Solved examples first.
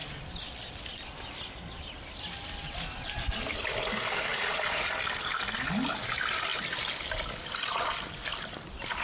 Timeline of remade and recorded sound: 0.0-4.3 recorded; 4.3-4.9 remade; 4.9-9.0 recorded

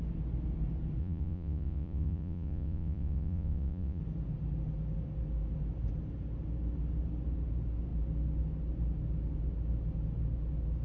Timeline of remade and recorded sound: 0.0-1.0 recorded; 1.0-4.0 remade; 4.0-10.8 recorded

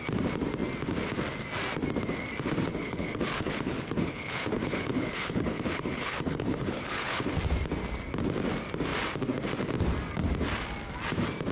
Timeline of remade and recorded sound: 0.0-2.7 recorded; 2.7-7.2 remade; 7.2-11.5 recorded